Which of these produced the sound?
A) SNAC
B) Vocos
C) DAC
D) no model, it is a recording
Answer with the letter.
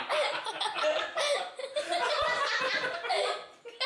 D